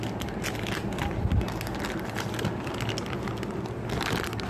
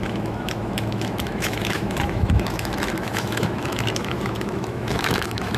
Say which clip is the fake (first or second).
second